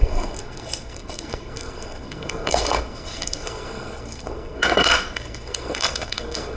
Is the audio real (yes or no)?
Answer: no